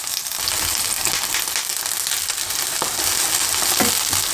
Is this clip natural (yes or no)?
yes